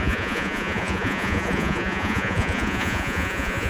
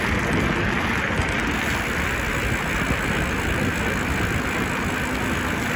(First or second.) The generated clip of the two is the first